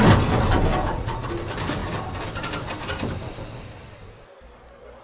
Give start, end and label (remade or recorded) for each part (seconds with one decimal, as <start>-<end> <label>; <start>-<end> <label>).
0.0-0.8 recorded; 0.8-1.3 remade; 1.3-5.0 recorded